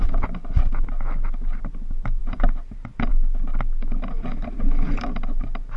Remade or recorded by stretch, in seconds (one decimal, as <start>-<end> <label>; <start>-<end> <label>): 0.0-5.8 recorded